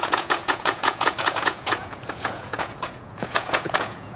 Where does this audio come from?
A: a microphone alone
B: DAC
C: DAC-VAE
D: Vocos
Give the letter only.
D